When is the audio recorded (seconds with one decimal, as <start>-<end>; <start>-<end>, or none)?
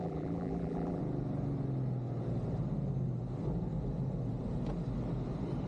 1.0-5.7